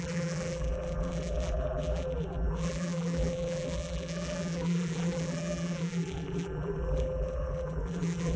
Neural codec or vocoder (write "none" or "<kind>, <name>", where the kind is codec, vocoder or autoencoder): vocoder, BigVGAN v2